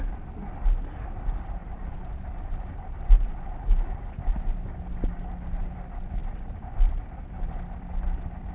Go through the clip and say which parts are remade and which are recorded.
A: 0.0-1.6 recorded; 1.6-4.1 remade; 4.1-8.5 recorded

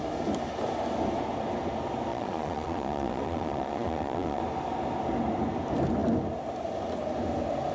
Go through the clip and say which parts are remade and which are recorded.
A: 0.0-2.1 recorded; 2.1-4.4 remade; 4.4-7.7 recorded